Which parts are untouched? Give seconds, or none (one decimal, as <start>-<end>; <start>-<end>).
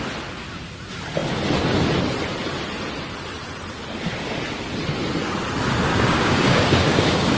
0.0-5.9